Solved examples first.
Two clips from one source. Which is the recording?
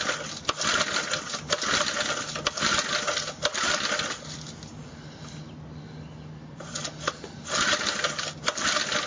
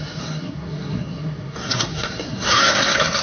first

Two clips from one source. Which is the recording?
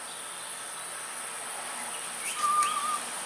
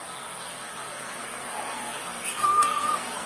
first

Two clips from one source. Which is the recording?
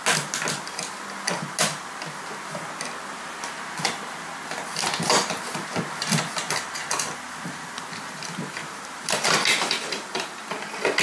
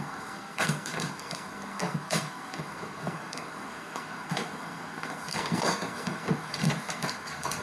first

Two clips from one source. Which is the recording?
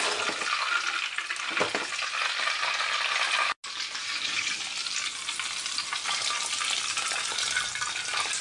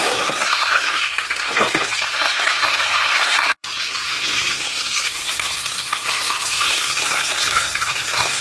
first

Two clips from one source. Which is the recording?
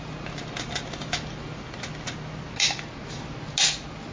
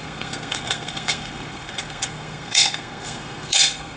first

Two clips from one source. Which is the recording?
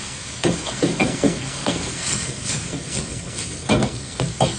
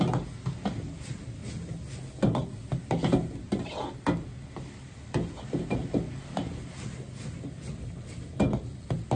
second